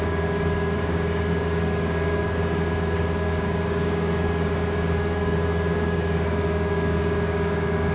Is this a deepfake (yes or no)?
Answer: yes